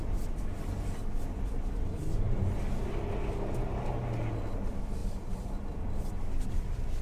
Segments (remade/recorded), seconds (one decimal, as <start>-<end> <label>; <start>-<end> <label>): 0.0-7.0 recorded